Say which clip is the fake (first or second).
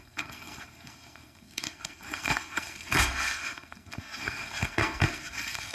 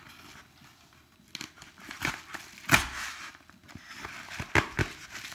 first